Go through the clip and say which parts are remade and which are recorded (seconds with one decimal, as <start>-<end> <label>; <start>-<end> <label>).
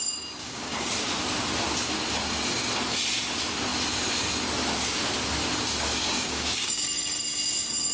0.0-0.4 recorded; 0.4-0.9 remade; 0.9-6.0 recorded; 6.0-6.8 remade; 6.8-7.9 recorded